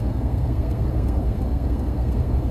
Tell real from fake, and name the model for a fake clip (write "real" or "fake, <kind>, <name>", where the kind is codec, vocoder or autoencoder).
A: fake, codec, SNAC